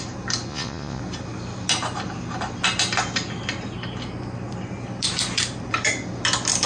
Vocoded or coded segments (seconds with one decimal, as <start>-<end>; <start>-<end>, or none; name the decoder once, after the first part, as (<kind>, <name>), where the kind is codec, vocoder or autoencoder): 0.5-1.0 (vocoder, Vocos)